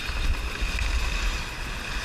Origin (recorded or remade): recorded